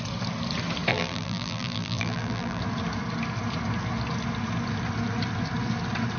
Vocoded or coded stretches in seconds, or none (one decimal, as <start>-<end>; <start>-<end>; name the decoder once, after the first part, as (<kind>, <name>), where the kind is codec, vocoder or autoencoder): 0.9-2.6 (vocoder, BigVGAN v2)